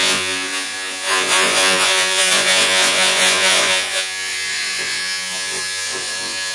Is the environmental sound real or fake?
fake